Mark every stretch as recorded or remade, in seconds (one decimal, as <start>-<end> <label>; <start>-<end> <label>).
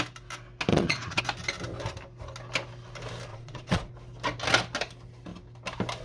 0.0-0.7 recorded; 0.7-1.2 remade; 1.2-3.3 recorded; 3.3-3.9 remade; 3.9-6.0 recorded